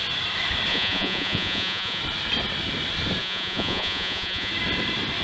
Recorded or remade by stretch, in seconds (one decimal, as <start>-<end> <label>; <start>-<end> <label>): 0.0-0.7 recorded; 0.7-2.0 remade; 2.0-3.2 recorded; 3.2-4.5 remade; 4.5-5.2 recorded